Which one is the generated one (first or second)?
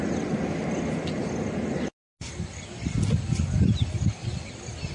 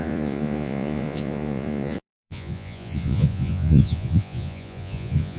second